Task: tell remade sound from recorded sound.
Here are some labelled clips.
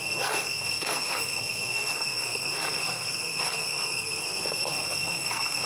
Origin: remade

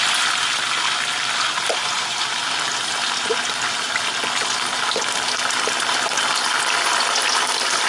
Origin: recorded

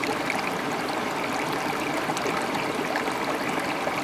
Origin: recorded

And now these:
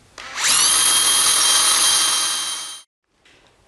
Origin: recorded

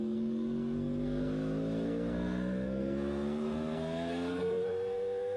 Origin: remade